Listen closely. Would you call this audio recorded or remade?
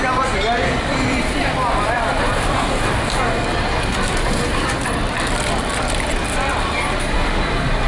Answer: remade